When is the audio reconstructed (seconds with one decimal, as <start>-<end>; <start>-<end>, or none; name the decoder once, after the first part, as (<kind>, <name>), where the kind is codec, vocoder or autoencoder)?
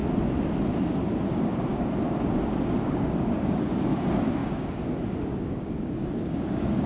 1.1-6.9 (codec, DAC)